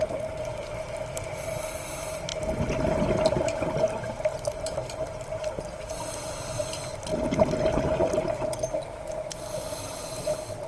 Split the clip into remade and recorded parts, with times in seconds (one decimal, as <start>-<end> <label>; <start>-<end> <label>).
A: 0.0-10.7 recorded